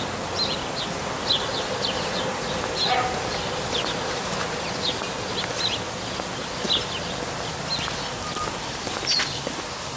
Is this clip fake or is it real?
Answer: real